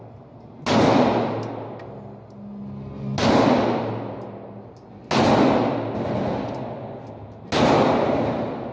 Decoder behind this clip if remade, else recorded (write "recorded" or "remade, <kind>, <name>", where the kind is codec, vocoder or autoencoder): recorded